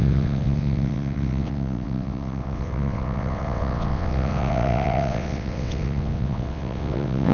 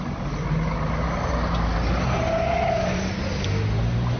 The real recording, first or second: second